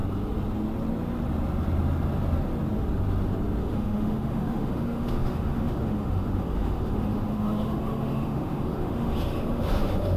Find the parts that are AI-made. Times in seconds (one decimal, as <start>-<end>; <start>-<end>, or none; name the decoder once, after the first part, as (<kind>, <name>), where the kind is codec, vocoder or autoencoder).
3.6-10.2 (autoencoder, DAC-VAE)